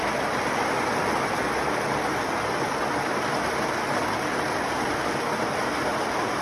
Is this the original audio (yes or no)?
yes